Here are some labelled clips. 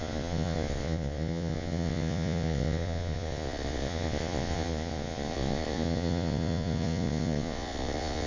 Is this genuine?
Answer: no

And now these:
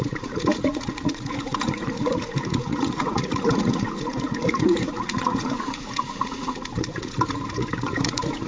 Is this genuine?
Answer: no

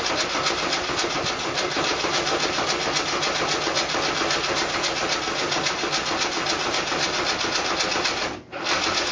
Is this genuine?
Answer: yes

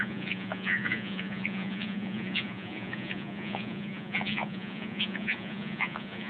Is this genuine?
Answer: no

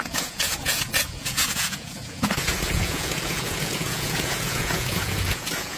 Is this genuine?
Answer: no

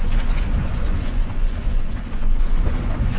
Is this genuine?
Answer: no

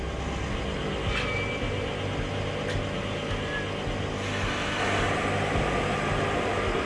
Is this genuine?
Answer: yes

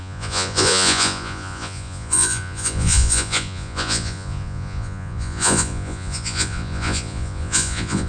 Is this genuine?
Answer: no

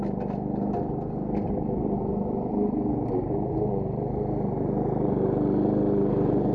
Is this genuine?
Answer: yes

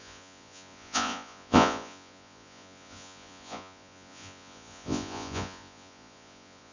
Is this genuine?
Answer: no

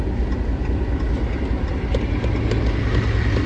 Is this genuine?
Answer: yes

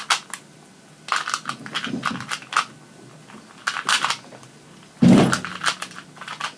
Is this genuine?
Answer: yes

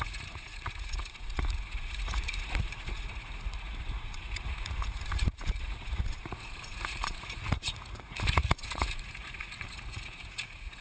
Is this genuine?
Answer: no